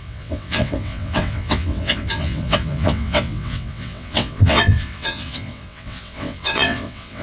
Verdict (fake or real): fake